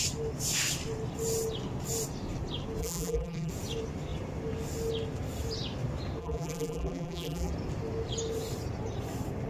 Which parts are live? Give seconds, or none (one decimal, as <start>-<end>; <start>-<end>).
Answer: 0.0-2.8; 3.5-6.2; 7.5-9.5

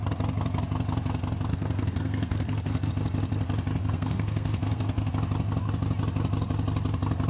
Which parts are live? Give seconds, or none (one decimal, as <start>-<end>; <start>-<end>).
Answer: 0.0-1.5; 2.9-3.8; 5.1-7.3

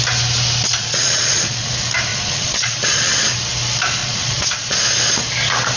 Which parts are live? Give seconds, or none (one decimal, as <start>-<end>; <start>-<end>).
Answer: 0.0-0.8; 1.7-2.1; 3.1-4.0; 4.8-5.8

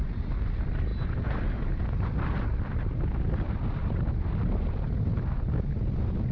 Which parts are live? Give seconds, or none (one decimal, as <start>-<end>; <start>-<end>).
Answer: 0.0-6.3

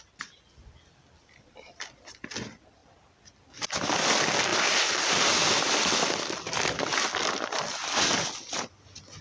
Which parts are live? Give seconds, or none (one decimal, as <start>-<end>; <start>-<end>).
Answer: 0.0-9.2

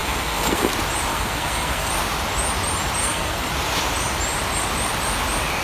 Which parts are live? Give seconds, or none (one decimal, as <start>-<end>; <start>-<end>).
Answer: 0.7-1.1; 1.9-3.0; 3.5-5.6

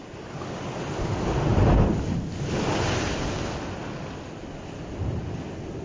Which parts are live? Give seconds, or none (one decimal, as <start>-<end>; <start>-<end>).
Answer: 0.0-5.8

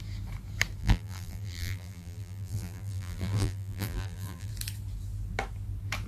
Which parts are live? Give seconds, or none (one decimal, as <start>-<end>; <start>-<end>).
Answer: 0.0-0.8; 4.5-6.1